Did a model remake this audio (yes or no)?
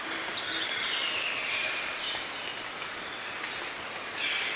no